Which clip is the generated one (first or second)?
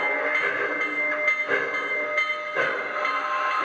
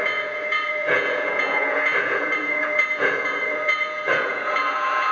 second